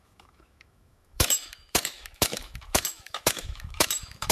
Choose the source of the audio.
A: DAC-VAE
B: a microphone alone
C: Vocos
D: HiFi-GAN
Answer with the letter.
A